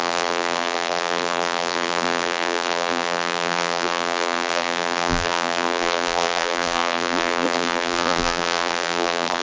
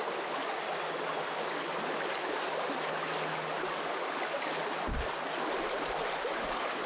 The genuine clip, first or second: second